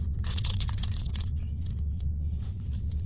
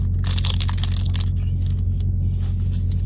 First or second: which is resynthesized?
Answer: first